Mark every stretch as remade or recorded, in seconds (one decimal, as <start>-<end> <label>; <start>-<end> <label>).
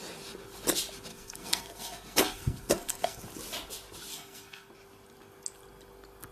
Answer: 0.0-1.1 recorded; 1.1-3.2 remade; 3.2-4.1 recorded; 4.1-4.7 remade; 4.7-6.3 recorded